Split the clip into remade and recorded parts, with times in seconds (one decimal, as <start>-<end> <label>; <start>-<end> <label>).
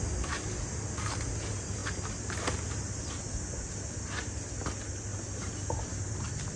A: 0.0-6.6 recorded